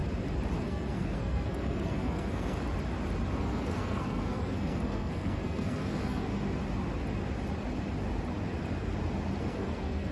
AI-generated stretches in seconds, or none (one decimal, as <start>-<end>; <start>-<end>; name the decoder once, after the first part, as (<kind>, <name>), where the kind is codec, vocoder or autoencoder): 0.6-2.6 (codec, SNAC); 3.4-6.3; 9.4-10.1